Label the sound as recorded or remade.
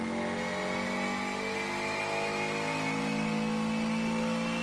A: recorded